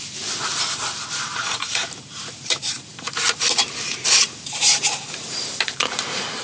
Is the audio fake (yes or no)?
yes